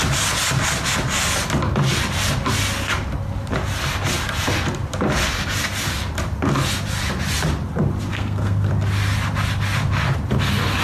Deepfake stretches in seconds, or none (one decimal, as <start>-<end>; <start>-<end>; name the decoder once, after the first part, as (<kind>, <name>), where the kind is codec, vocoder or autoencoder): 8.1-8.7 (codec, SNAC)